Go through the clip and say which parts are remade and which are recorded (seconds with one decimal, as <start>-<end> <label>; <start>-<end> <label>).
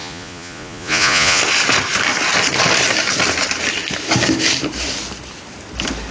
0.0-1.4 remade; 1.4-6.1 recorded